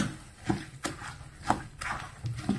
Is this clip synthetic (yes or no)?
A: no